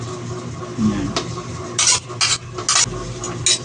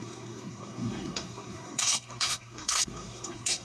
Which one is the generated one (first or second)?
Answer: second